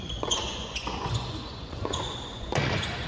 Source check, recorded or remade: remade